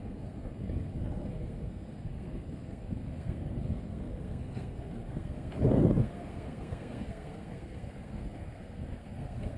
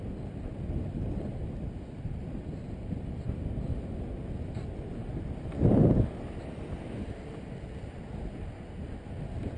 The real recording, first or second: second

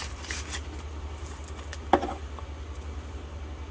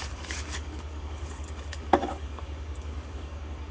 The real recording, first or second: first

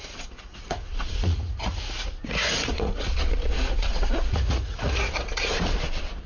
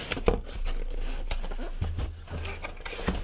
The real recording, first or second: second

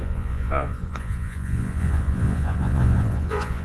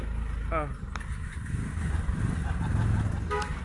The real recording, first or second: second